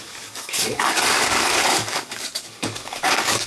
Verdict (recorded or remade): remade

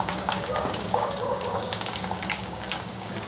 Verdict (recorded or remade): remade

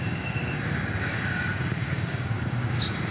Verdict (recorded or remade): remade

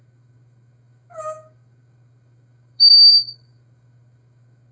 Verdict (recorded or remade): remade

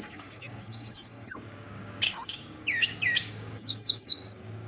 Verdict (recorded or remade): remade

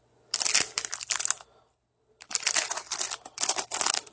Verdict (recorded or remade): recorded